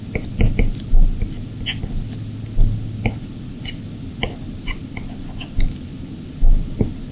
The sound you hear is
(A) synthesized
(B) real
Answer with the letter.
B